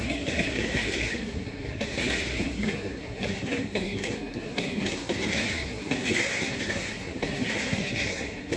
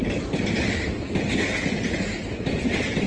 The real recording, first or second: second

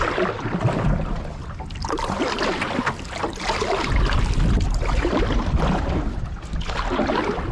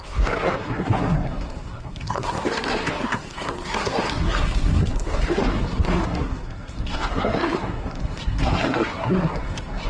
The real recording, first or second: first